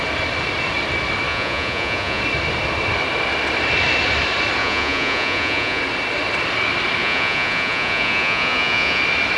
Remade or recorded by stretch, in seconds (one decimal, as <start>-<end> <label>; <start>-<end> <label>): 0.0-1.3 recorded; 1.3-2.2 remade; 2.2-4.6 recorded; 4.6-5.8 remade; 5.8-7.0 recorded; 7.0-9.0 remade; 9.0-9.4 recorded